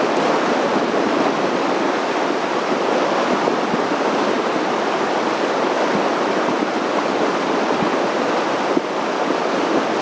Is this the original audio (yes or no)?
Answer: yes